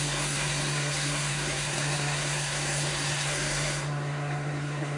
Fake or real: fake